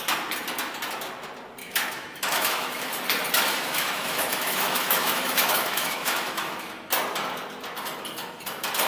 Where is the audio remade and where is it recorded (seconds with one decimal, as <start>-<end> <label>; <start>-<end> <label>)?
0.0-1.6 recorded; 1.6-2.9 remade; 2.9-3.5 recorded; 3.5-6.9 remade; 6.9-8.9 recorded